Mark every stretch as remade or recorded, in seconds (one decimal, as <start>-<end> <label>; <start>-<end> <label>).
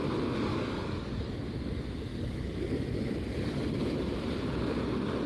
0.0-0.5 recorded; 0.5-1.3 remade; 1.3-2.1 recorded; 2.1-2.8 remade; 2.8-5.3 recorded